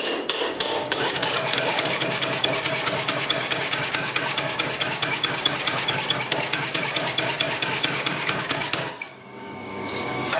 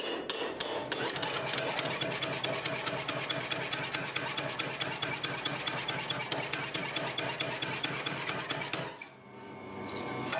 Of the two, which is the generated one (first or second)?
first